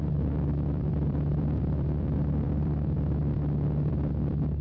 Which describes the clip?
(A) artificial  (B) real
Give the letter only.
A